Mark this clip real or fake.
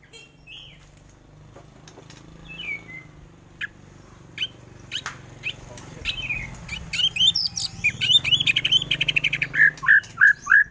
real